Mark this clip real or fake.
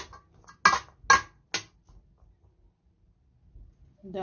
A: real